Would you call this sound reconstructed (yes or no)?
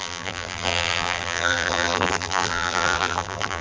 yes